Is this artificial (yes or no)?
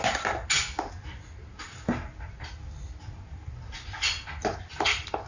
no